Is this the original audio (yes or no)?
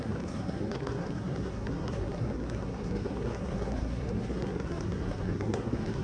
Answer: no